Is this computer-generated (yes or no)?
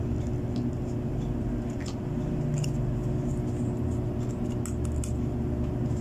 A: no